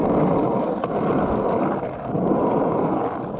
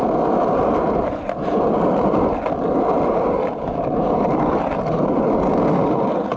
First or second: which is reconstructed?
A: first